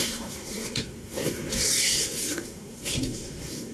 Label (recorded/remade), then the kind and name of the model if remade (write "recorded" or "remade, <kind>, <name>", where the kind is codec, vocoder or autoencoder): remade, codec, SNAC